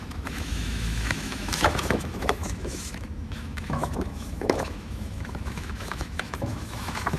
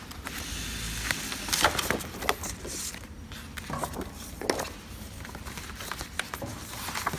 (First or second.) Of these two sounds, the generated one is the first